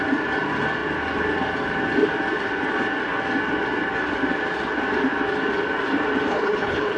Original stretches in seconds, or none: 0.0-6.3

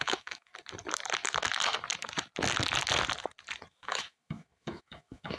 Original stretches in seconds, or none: 0.5-3.7

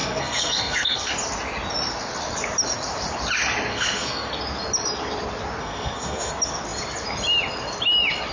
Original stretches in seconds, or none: 1.1-3.7; 4.3-5.6; 6.3-8.3

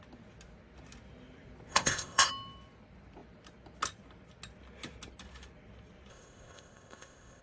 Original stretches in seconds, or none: 0.0-1.7; 2.3-6.1

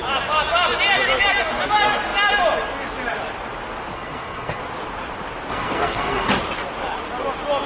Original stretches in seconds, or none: 0.0-3.9; 4.6-5.5; 6.3-7.7

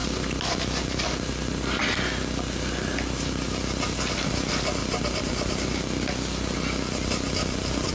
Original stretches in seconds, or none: 0.0-7.9